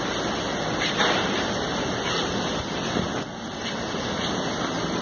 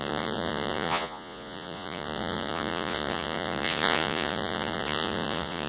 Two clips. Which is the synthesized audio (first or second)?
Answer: second